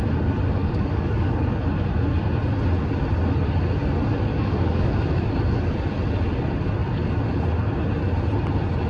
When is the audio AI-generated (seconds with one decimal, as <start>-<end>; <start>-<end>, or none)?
0.6-1.6; 4.3-4.9